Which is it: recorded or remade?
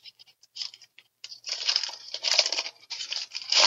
remade